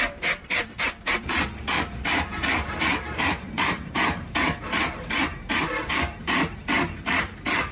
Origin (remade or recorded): remade